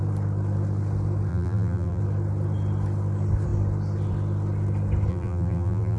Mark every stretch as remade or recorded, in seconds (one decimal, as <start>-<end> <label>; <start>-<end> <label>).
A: 0.0-1.3 recorded; 1.3-2.0 remade; 2.0-5.1 recorded; 5.1-6.0 remade